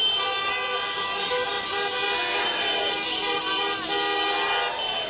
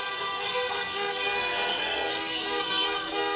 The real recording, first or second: first